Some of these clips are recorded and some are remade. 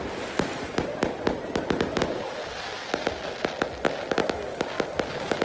recorded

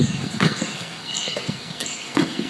remade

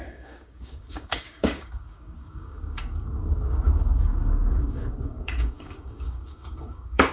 remade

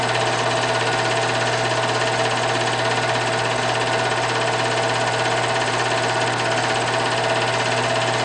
recorded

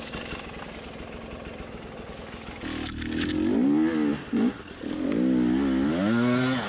recorded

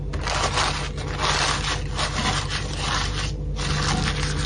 recorded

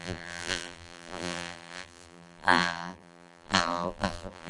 remade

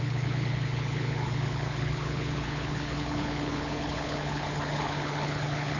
remade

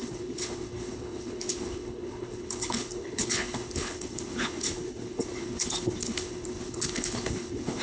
remade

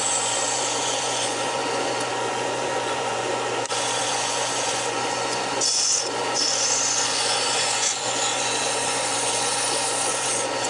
remade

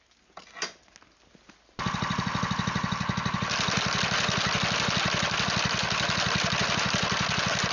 recorded